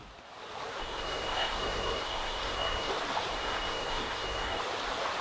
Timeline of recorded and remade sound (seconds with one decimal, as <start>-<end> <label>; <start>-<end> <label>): 0.0-0.8 recorded; 0.8-2.9 remade; 2.9-3.3 recorded; 3.3-4.6 remade; 4.6-5.2 recorded